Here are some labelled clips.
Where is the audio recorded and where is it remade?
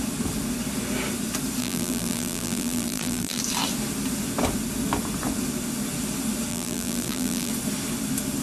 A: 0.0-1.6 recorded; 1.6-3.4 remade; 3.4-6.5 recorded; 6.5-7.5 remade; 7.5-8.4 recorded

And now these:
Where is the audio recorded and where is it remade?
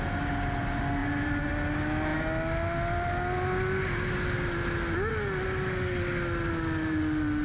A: 0.0-1.0 recorded; 1.0-1.5 remade; 1.5-7.4 recorded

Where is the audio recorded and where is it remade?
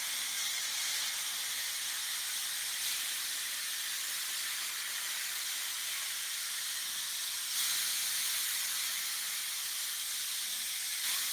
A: 0.0-2.7 recorded; 2.7-6.5 remade; 6.5-11.3 recorded